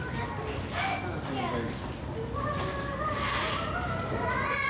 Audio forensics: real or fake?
real